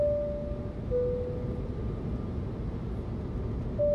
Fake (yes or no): no